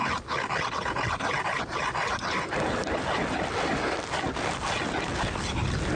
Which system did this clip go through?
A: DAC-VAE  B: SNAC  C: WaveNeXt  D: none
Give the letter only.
D